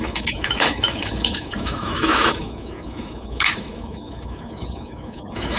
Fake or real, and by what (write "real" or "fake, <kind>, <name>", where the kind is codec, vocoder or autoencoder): fake, autoencoder, DAC-VAE